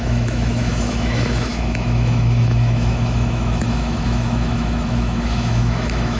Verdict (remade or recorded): remade